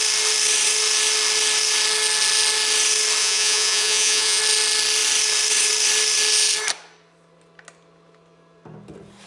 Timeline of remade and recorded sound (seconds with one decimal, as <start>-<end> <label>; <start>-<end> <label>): 0.0-3.2 recorded; 3.2-4.4 remade; 4.4-9.3 recorded